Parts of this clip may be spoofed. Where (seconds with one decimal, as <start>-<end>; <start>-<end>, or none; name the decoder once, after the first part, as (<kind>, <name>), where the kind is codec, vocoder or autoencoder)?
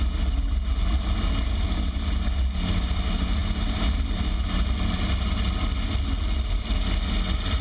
none